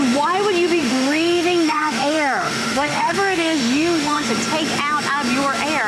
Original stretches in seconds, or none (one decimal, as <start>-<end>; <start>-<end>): 0.0-0.8; 4.3-5.9